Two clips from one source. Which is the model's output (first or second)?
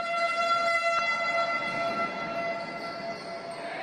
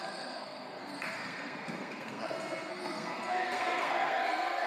second